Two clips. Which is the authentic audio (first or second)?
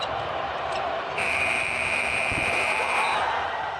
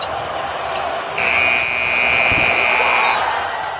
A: second